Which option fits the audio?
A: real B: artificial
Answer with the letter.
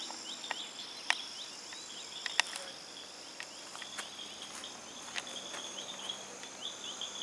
A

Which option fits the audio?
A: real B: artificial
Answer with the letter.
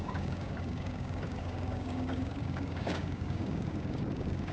B